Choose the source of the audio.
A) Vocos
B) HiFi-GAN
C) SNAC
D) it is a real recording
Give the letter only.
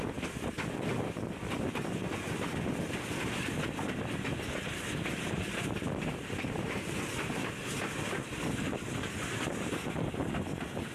D